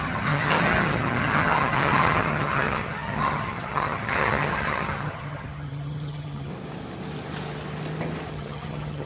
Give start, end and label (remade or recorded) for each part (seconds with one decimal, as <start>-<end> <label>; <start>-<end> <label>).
0.0-6.5 remade; 6.5-8.3 recorded; 8.3-9.1 remade